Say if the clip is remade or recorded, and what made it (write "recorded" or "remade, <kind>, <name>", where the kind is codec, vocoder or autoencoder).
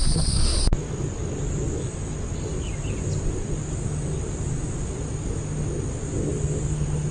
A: recorded